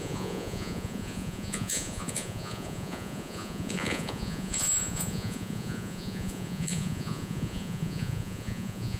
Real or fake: fake